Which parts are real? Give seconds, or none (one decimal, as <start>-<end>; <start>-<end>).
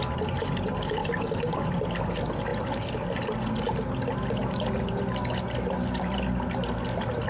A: 0.0-1.0; 1.7-4.4; 5.0-7.3